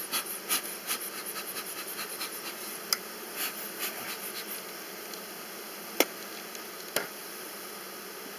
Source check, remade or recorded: recorded